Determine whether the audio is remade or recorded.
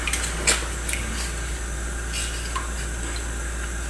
recorded